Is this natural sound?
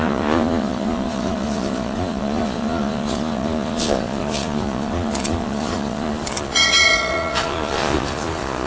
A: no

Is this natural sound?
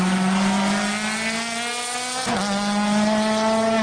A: yes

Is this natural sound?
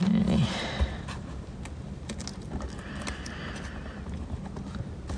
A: yes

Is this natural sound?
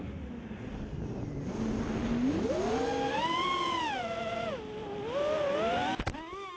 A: yes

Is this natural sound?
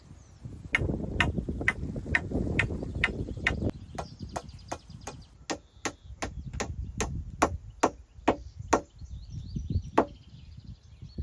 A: yes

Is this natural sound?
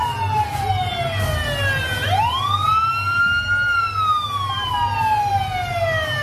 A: yes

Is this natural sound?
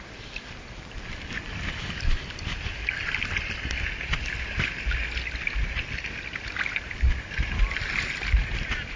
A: yes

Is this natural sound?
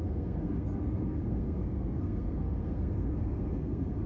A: no